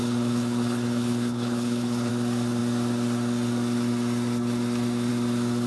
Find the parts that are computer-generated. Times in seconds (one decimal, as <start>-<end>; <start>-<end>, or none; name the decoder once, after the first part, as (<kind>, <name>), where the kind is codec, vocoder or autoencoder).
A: 0.0-2.1 (codec, HILCodec)